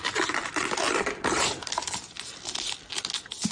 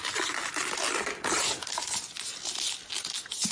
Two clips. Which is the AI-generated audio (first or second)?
first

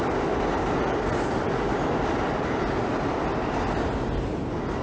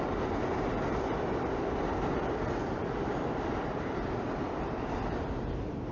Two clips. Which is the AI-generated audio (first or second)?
second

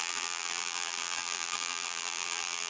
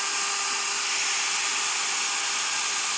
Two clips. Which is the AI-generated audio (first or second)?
first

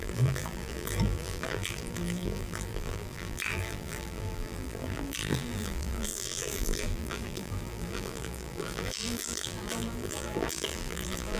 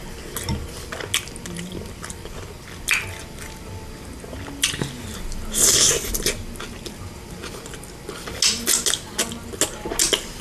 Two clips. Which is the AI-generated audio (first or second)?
first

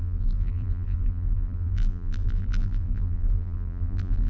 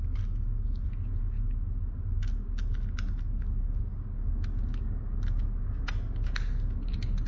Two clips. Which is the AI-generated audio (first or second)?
first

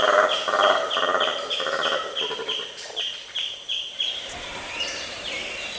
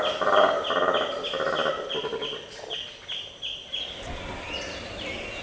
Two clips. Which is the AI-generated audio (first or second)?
first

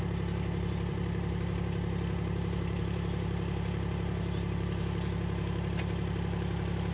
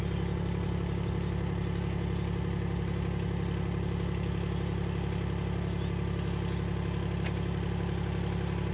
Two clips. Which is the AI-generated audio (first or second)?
first